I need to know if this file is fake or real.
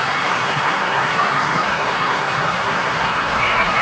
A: fake